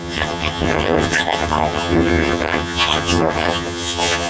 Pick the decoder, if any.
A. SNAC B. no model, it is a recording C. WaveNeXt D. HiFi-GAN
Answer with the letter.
D